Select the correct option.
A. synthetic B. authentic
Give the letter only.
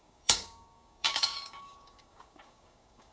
A